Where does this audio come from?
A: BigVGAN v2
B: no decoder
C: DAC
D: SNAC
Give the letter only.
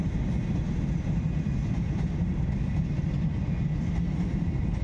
B